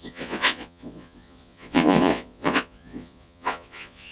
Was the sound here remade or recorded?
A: remade